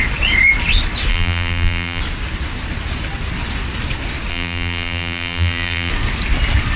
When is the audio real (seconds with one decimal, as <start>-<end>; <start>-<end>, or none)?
0.0-1.1; 2.0-4.3; 5.9-6.8